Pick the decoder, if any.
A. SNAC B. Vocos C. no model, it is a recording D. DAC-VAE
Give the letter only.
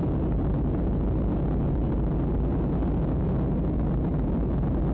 C